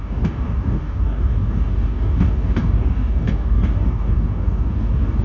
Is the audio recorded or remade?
remade